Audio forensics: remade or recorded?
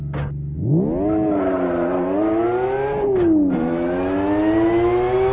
recorded